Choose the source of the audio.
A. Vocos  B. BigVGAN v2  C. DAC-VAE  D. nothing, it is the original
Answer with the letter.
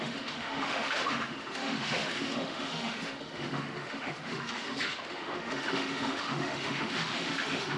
C